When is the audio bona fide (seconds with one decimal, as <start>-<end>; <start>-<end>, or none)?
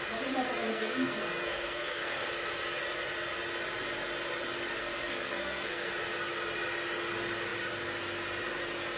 0.0-0.7; 2.3-4.8; 5.9-9.0